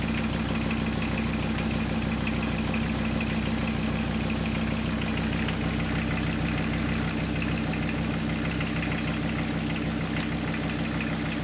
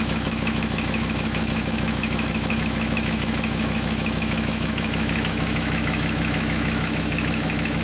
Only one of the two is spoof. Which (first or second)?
second